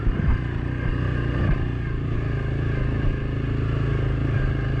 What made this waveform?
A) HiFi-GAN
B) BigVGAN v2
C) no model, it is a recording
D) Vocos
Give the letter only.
C